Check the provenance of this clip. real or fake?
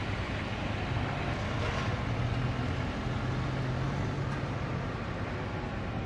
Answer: real